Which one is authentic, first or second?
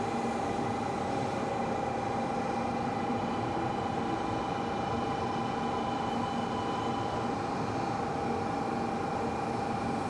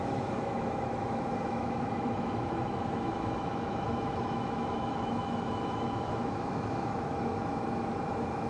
first